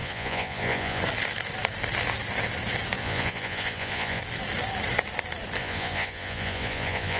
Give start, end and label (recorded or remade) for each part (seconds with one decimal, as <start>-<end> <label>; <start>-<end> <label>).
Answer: 0.0-1.0 remade; 1.0-3.0 recorded; 3.0-4.2 remade; 4.2-5.6 recorded; 5.6-7.2 remade